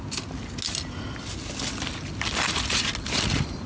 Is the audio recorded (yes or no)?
yes